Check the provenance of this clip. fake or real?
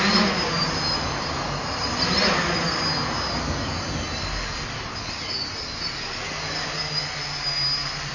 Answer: real